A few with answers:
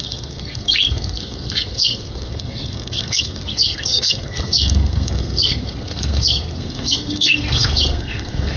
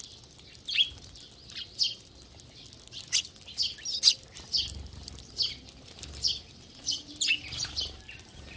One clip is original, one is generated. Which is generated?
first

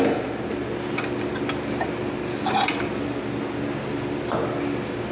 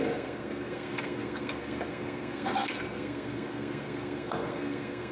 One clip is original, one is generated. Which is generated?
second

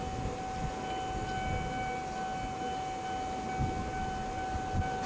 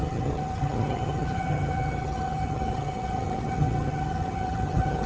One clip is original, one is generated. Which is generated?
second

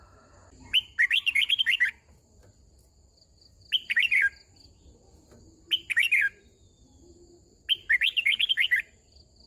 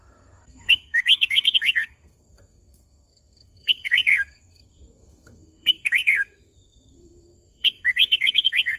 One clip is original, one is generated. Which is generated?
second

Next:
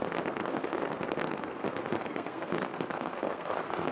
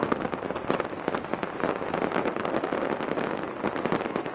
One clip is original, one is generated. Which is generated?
first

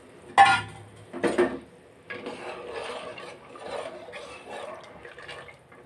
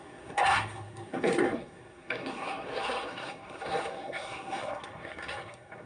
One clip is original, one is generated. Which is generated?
second